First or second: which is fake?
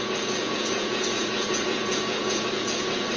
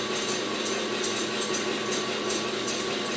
first